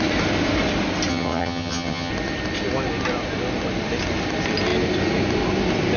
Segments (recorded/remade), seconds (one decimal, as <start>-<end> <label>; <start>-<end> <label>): 0.0-1.1 recorded; 1.1-2.1 remade; 2.1-6.0 recorded